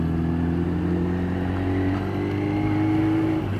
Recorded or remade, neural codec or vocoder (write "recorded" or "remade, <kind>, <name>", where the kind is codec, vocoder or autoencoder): recorded